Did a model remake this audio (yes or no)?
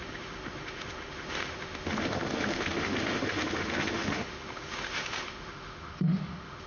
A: yes